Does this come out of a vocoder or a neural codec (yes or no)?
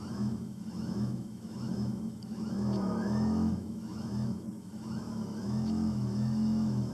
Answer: yes